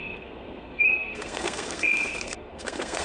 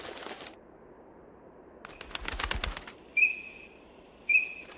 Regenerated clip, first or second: first